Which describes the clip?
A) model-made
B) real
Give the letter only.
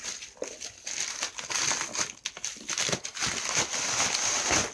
B